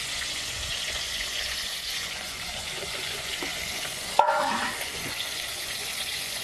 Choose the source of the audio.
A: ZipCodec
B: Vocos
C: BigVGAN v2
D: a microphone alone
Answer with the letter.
B